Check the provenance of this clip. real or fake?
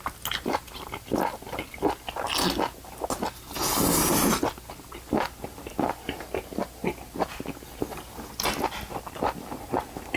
real